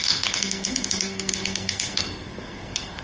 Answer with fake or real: fake